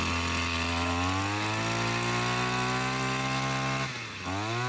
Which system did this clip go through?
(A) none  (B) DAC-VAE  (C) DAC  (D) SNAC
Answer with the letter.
A